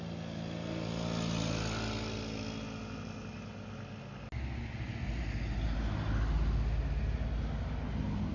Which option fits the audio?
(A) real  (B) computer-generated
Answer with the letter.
A